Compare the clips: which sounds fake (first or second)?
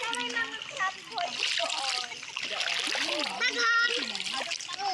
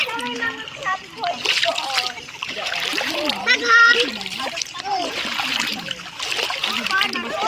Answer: second